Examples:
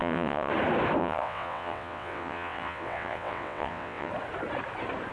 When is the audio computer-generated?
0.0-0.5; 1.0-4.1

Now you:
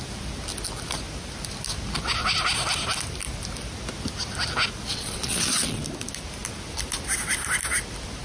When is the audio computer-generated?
4.9-5.8

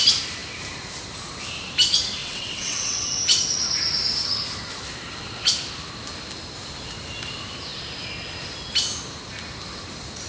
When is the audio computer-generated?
2.2-3.2

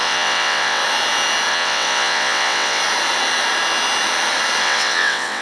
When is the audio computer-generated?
0.0-0.8; 1.5-2.8; 4.6-5.4